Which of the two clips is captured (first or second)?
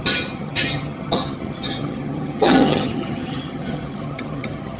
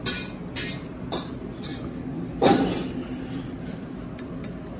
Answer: second